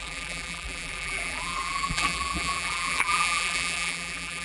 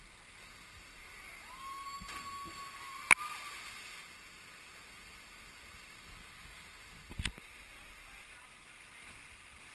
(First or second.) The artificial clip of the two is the first